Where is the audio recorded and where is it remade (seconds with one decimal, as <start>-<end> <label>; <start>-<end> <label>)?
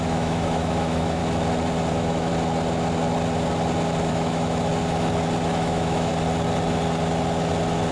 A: 0.0-1.2 remade; 1.2-1.9 recorded; 1.9-2.3 remade; 2.3-4.1 recorded; 4.1-4.7 remade; 4.7-5.5 recorded; 5.5-6.1 remade; 6.1-7.9 recorded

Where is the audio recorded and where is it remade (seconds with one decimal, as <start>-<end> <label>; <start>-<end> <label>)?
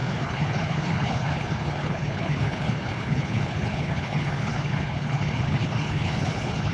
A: 0.0-6.7 remade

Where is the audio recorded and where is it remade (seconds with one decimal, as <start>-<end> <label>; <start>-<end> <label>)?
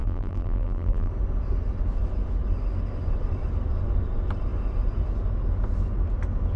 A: 0.0-1.1 remade; 1.1-6.6 recorded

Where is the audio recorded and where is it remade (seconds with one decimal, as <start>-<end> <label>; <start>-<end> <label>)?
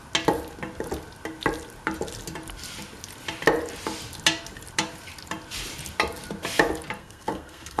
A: 0.0-7.0 recorded; 7.0-7.8 remade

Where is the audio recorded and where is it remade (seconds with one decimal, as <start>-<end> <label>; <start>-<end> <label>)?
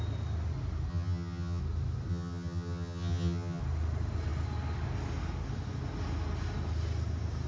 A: 0.0-0.9 recorded; 0.9-1.6 remade; 1.6-2.1 recorded; 2.1-3.6 remade; 3.6-7.5 recorded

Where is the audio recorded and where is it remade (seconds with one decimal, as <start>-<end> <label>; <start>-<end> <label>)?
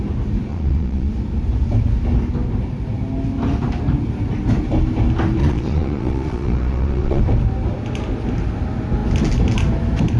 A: 0.0-0.5 recorded; 0.5-1.1 remade; 1.1-5.4 recorded; 5.4-7.2 remade; 7.2-10.2 recorded